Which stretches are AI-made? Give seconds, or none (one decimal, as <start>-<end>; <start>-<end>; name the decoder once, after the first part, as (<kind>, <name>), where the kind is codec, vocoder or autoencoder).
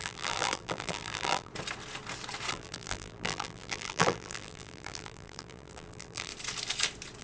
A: 0.0-1.5 (vocoder, BigVGAN v2); 2.5-6.3